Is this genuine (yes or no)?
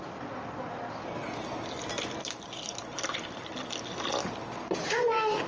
yes